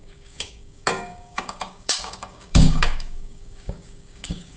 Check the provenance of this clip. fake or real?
fake